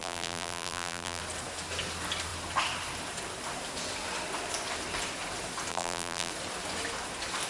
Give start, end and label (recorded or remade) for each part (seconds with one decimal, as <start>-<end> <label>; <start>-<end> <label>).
0.0-1.2 remade; 1.2-5.7 recorded; 5.7-6.3 remade; 6.3-7.5 recorded